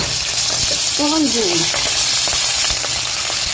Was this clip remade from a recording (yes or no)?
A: no